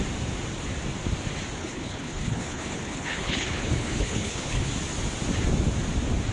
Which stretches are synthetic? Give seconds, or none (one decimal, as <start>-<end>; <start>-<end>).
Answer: 1.6-4.7